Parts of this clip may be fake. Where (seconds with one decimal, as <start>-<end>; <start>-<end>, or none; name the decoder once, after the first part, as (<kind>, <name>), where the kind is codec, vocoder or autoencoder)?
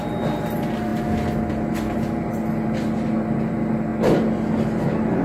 none